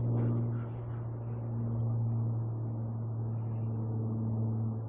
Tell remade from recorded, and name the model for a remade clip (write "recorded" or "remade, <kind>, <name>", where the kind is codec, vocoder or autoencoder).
recorded